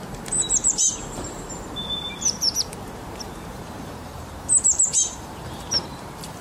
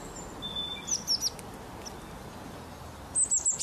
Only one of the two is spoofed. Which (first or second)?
first